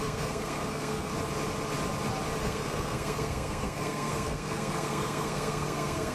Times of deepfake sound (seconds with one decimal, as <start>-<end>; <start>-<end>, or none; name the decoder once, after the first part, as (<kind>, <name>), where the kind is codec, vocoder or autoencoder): 0.0-1.1 (codec, SNAC); 2.4-6.1